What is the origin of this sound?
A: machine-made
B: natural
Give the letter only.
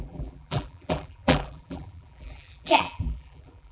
A